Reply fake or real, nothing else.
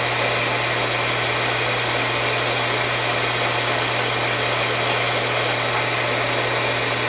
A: real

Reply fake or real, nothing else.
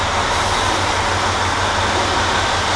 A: real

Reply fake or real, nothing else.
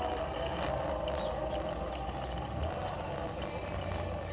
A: real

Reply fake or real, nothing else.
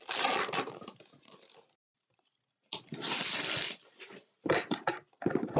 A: real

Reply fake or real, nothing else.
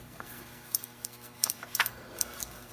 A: fake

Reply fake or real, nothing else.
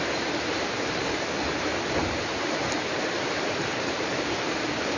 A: fake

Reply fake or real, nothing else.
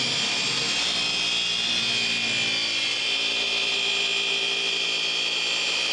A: real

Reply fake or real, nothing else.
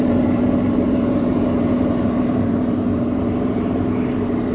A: fake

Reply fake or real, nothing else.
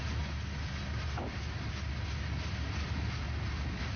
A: real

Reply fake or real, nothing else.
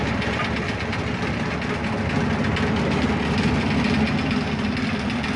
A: real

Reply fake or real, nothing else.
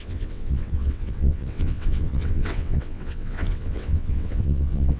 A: fake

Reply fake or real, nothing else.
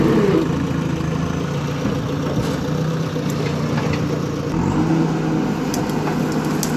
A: real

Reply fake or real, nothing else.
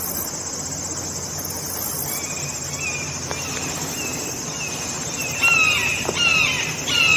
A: real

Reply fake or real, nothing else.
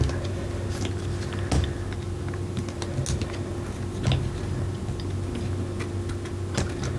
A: real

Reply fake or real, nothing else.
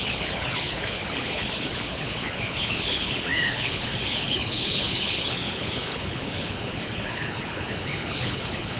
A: fake